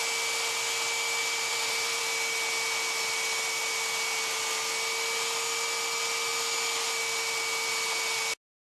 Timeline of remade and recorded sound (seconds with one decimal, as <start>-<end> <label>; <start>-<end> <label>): 0.0-1.2 recorded; 1.2-2.0 remade; 2.0-8.8 recorded

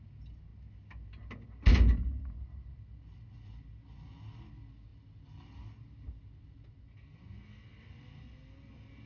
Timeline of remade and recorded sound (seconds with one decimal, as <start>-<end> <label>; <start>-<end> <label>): 0.0-9.1 recorded

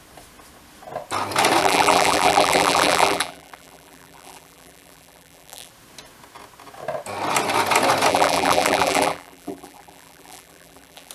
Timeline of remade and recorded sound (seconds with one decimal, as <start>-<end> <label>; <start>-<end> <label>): 0.0-1.6 recorded; 1.6-5.7 remade; 5.7-8.1 recorded; 8.1-11.1 remade

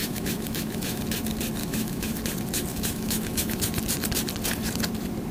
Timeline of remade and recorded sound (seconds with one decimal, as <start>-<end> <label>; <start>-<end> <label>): 0.0-1.0 remade; 1.0-1.6 recorded; 1.6-2.2 remade; 2.2-2.7 recorded; 2.7-3.6 remade; 3.6-5.3 recorded

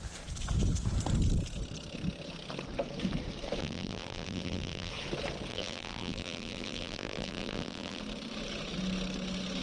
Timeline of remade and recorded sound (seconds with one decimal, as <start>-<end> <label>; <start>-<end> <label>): 0.0-3.6 recorded; 3.6-4.9 remade; 4.9-5.5 recorded; 5.5-8.0 remade; 8.0-9.6 recorded

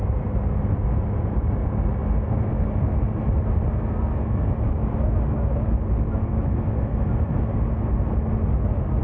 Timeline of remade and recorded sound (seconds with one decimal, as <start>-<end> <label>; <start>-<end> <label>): 0.0-9.0 recorded

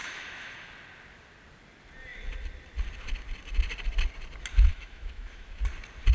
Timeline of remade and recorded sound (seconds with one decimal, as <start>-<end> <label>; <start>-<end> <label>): 0.0-0.7 remade; 0.7-4.7 recorded; 4.7-5.6 remade; 5.6-6.1 recorded